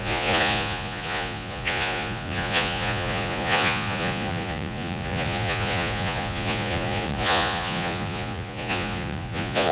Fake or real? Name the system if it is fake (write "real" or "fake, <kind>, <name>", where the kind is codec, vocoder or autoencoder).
fake, vocoder, Vocos